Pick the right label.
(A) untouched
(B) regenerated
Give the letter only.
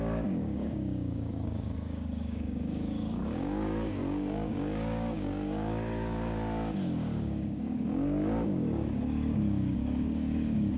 B